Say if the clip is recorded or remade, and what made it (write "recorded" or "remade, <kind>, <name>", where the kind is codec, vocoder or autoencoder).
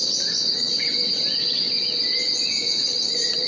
remade, vocoder, Vocos